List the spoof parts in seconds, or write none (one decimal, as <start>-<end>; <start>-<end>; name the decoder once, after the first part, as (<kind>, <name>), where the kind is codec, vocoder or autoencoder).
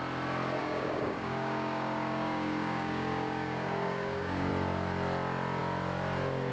0.6-4.5 (codec, DAC)